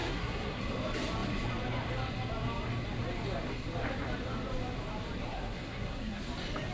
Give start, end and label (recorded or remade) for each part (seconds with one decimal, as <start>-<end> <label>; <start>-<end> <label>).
0.0-0.6 remade; 0.6-5.2 recorded; 5.2-6.2 remade; 6.2-6.7 recorded